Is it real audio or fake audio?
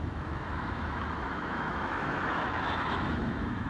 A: fake